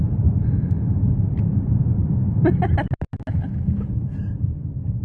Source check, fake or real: real